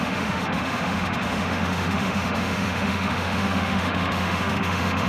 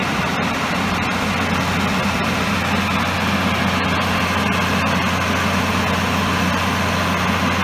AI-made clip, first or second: first